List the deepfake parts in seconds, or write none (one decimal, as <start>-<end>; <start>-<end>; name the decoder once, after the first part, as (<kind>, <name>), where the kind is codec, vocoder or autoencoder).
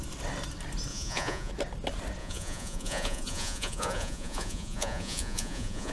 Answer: 0.9-1.5 (vocoder, Vocos); 2.2-5.9